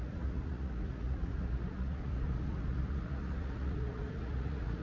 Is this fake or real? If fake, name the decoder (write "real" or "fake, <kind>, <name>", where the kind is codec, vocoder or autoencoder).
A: fake, vocoder, Vocos